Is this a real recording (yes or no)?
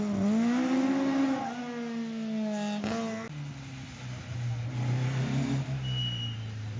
yes